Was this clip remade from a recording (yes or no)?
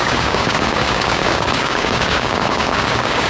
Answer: yes